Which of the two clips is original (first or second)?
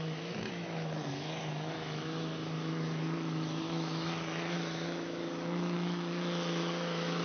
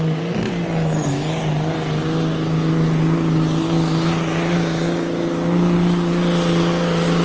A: second